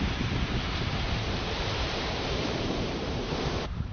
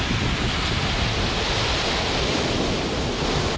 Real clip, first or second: second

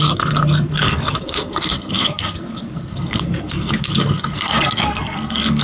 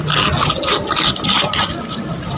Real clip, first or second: second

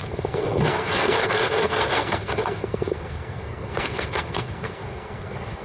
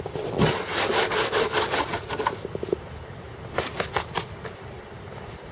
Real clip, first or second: second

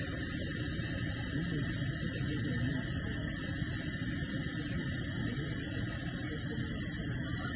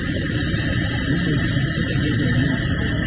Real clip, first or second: first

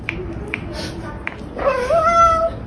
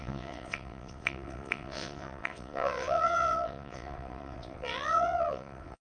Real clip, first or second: first